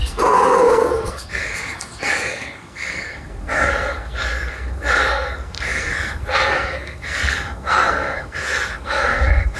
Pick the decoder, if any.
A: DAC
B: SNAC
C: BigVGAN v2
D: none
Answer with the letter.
B